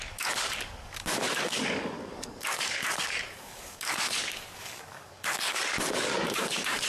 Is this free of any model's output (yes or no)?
no